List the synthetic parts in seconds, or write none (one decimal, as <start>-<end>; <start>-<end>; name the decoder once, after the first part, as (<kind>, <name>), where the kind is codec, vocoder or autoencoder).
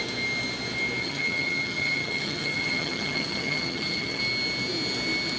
1.0-4.2 (vocoder, HiFi-GAN)